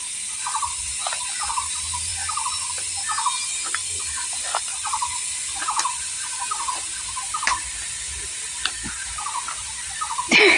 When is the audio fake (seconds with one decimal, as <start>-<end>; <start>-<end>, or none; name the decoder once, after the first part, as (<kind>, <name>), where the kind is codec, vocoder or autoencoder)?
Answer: 0.0-0.6 (vocoder, BigVGAN v2); 1.0-1.5; 2.1-2.7; 3.8-6.0